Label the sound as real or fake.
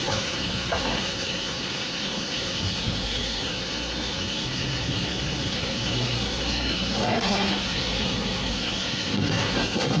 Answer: fake